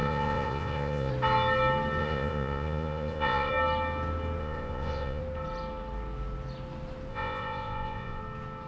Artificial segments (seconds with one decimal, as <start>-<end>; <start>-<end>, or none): 0.0-1.1; 2.0-3.5; 4.4-5.2; 7.1-8.2